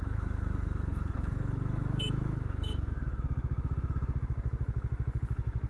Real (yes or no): no